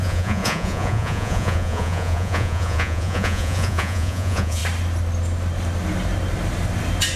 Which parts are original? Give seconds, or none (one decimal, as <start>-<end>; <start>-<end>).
4.6-7.2